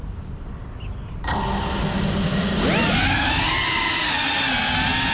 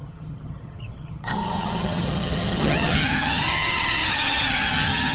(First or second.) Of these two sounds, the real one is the first